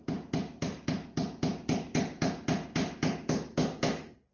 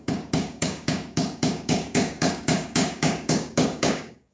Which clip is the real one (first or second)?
first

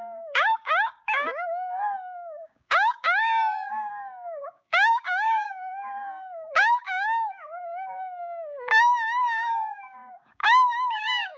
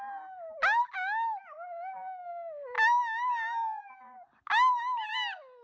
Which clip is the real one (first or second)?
second